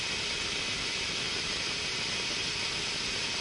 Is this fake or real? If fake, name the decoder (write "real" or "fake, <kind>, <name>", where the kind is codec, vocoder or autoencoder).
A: real